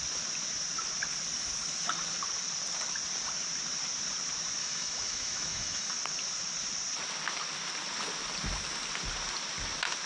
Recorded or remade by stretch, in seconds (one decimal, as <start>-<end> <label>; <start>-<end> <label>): 0.0-4.6 recorded; 4.6-5.9 remade; 5.9-10.1 recorded

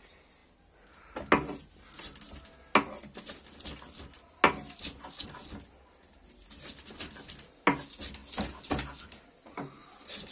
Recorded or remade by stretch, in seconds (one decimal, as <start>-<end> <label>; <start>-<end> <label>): 0.0-10.3 recorded

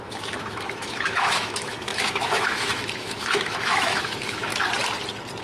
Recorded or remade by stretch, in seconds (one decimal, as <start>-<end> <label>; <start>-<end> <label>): 0.0-4.5 remade; 4.5-5.4 recorded

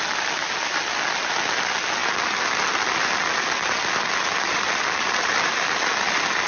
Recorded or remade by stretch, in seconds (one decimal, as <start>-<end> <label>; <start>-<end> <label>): 0.0-6.5 recorded

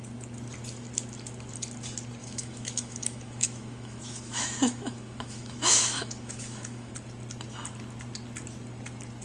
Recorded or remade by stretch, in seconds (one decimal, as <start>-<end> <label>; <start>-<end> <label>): 0.0-2.2 recorded; 2.2-6.9 remade; 6.9-9.2 recorded